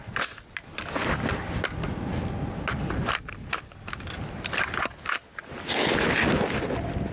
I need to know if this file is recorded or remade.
recorded